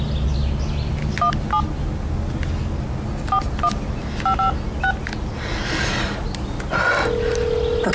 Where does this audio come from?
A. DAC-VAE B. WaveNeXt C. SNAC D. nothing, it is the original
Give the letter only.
D